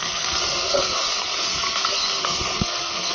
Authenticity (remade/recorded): remade